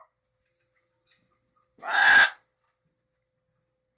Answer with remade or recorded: recorded